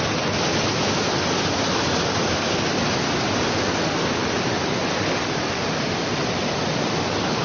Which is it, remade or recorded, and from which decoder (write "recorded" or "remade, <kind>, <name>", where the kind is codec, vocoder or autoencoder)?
recorded